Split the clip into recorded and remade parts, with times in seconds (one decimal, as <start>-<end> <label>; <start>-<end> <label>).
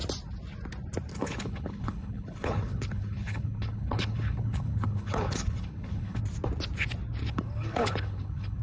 0.0-1.1 recorded; 1.1-6.2 remade; 6.2-7.2 recorded; 7.2-8.6 remade